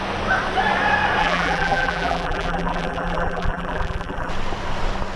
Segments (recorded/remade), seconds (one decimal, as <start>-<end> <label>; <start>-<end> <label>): 0.0-1.2 recorded; 1.2-4.3 remade; 4.3-5.2 recorded